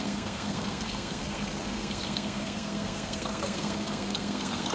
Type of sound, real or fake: fake